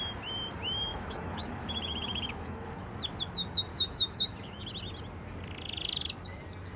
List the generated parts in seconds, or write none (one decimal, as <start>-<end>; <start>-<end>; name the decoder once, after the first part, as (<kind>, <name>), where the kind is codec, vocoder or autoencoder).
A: 0.9-2.9 (autoencoder, DAC-VAE); 3.7-4.7